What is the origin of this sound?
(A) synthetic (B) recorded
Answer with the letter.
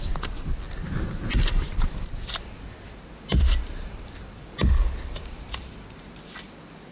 B